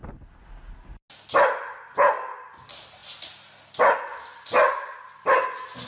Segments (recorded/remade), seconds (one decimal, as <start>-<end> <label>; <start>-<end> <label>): 0.0-5.9 recorded